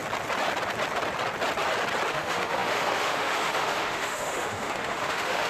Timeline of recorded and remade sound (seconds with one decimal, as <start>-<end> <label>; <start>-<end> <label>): 0.0-2.1 recorded; 2.1-5.5 remade